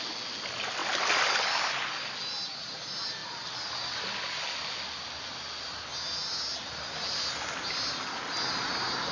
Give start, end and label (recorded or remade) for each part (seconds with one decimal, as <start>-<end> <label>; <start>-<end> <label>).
0.0-9.1 recorded